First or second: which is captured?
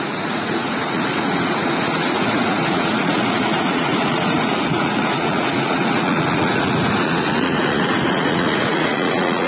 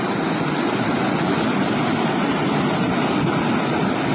second